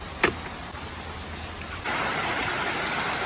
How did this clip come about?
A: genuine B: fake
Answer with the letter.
A